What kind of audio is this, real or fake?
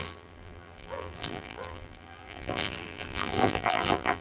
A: fake